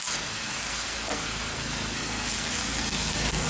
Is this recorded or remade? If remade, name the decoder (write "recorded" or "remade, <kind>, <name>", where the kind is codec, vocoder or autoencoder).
remade, codec, SNAC